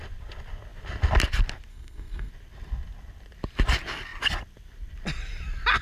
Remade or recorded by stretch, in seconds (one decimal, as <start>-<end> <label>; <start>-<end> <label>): 0.0-1.7 recorded; 1.7-2.3 remade; 2.3-5.8 recorded

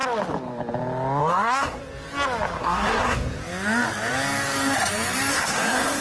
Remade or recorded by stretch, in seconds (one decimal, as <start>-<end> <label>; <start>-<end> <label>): 0.0-1.2 recorded; 1.2-1.8 remade; 1.8-2.6 recorded; 2.6-3.4 remade; 3.4-5.3 recorded; 5.3-6.0 remade